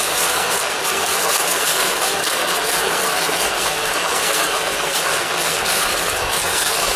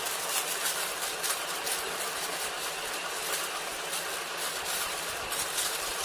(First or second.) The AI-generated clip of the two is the first